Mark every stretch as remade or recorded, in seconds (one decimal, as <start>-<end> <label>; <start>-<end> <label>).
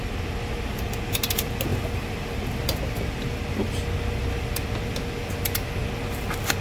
0.0-6.6 recorded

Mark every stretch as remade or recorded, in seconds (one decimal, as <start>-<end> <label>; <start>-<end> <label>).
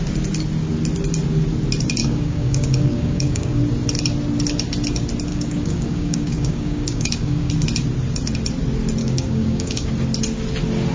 0.0-2.0 recorded; 2.0-3.6 remade; 3.6-5.3 recorded; 5.3-7.5 remade; 7.5-9.0 recorded; 9.0-9.9 remade; 9.9-10.9 recorded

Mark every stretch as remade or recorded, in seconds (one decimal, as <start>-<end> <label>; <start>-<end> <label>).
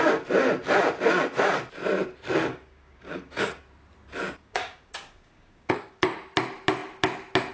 0.0-2.5 recorded; 2.5-3.6 remade; 3.6-4.4 recorded; 4.4-6.0 remade; 6.0-7.5 recorded